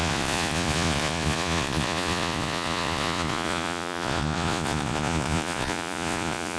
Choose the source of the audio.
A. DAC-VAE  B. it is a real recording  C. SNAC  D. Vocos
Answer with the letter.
D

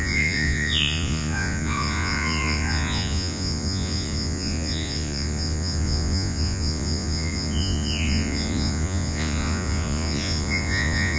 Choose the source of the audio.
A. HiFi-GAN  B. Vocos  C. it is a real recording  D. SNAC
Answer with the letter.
B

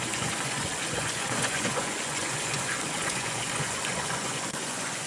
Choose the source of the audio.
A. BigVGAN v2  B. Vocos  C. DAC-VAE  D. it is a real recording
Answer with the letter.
B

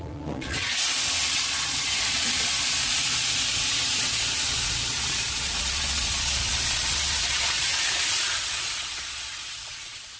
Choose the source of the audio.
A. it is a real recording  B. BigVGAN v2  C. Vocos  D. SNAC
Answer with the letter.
C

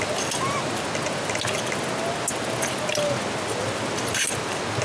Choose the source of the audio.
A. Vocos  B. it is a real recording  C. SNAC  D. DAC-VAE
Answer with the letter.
B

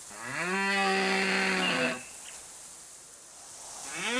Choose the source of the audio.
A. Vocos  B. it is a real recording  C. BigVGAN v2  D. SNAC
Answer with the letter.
B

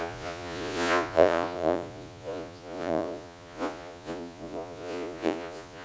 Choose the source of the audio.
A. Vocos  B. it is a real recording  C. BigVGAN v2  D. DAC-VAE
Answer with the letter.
A